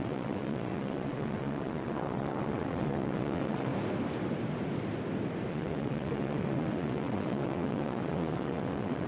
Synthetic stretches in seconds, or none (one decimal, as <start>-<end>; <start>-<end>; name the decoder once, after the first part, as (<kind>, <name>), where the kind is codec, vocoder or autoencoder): 0.0-3.7 (vocoder, WaveNeXt); 5.5-9.1